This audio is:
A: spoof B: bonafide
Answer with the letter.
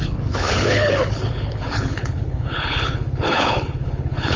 A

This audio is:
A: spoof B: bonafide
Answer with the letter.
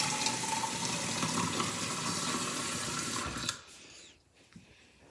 B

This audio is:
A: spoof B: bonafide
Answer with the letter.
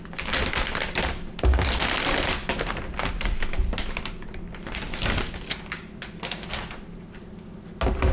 B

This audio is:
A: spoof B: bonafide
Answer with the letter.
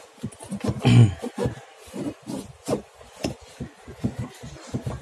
B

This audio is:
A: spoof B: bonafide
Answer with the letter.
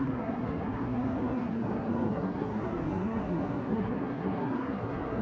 A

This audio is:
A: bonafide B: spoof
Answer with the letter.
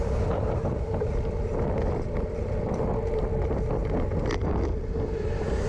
A